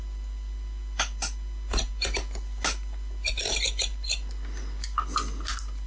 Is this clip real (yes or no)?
yes